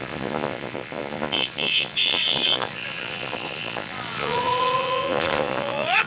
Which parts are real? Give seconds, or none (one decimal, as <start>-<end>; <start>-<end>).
none